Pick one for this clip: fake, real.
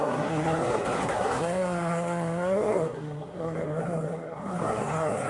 fake